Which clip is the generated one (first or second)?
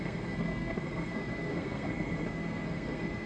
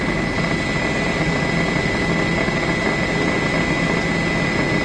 first